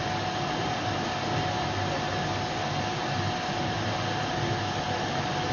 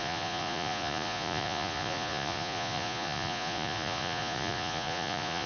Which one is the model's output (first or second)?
second